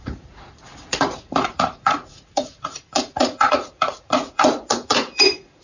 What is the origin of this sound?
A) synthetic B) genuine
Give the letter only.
A